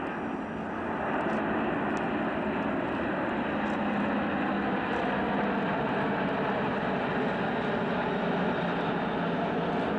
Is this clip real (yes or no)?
yes